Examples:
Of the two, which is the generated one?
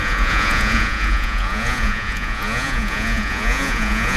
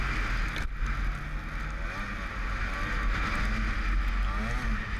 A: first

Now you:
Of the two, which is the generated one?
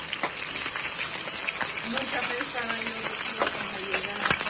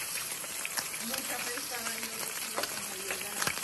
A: second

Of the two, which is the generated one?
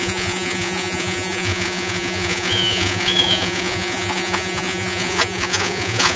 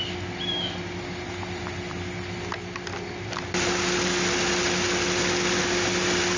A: first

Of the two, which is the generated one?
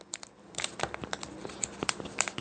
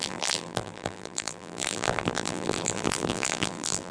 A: second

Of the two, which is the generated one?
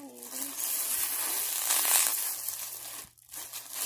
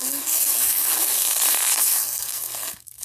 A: second